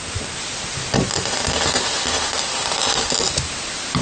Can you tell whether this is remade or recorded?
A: recorded